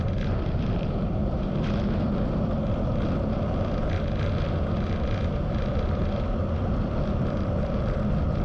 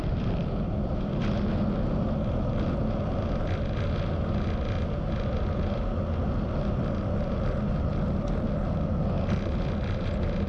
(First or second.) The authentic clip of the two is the second